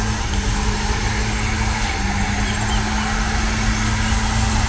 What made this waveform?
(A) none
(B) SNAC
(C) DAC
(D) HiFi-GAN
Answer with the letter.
A